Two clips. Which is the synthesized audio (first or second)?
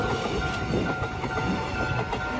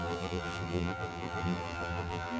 second